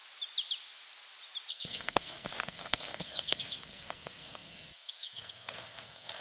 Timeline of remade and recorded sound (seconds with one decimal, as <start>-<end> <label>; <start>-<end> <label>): 0.0-1.5 recorded; 1.5-6.2 remade